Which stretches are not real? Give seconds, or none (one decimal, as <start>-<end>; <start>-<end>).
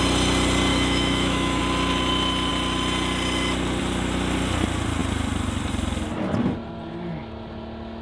0.7-1.6